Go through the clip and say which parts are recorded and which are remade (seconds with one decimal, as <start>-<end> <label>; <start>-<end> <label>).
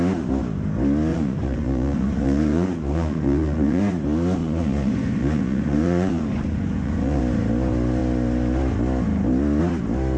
0.0-1.1 recorded; 1.1-3.8 remade; 3.8-4.4 recorded; 4.4-7.2 remade; 7.2-10.2 recorded